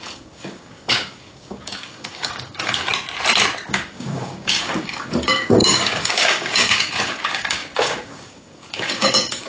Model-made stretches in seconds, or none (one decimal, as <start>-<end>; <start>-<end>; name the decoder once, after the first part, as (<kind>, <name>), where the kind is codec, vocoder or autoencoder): 0.0-2.9 (codec, DAC); 3.7-9.5